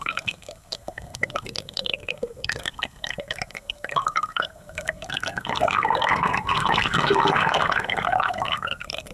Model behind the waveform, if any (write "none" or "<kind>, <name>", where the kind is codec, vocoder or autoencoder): codec, SNAC